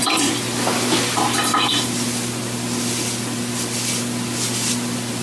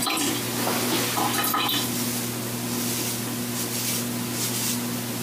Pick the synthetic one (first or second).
first